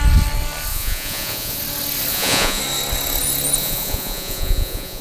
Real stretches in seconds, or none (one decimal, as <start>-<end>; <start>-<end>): 0.0-0.7; 1.6-2.1; 2.6-3.6